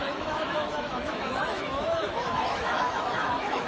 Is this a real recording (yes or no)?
no